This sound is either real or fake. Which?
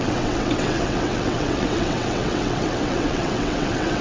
fake